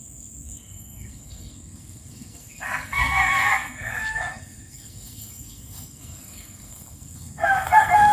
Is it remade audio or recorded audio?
remade